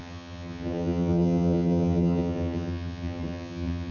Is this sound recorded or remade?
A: remade